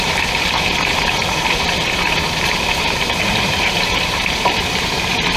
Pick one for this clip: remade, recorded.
remade